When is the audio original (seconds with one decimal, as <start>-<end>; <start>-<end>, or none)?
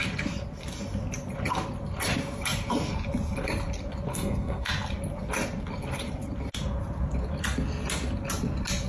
0.0-4.1; 4.7-8.9